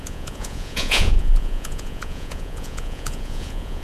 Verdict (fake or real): fake